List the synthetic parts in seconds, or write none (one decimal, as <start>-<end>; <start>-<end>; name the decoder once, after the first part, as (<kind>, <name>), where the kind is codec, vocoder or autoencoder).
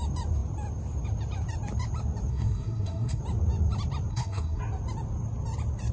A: 2.3-3.2 (codec, SNAC); 4.1-4.6